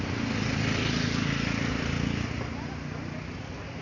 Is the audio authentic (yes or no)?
yes